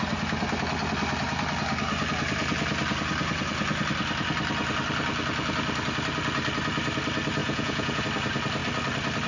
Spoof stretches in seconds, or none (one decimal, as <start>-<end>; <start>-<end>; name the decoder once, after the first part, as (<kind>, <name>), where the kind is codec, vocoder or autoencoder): 7.4-8.0 (vocoder, Vocos)